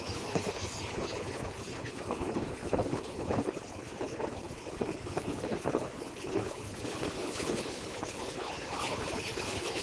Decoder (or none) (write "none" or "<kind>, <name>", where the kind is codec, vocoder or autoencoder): codec, HILCodec